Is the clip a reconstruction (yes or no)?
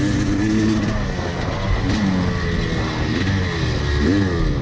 no